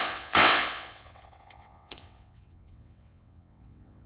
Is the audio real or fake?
fake